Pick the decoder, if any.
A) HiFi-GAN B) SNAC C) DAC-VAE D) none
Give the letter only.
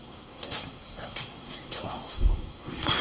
B